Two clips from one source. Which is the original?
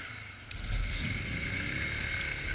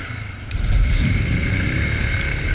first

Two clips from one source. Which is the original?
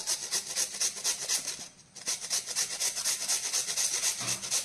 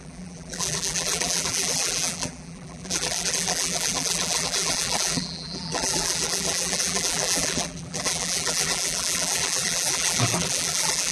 first